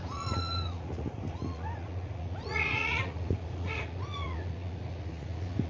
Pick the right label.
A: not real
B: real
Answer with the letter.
A